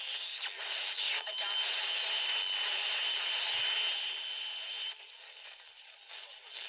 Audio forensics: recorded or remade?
recorded